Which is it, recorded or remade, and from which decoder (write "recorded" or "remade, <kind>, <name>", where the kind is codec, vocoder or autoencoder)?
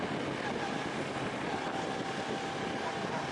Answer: recorded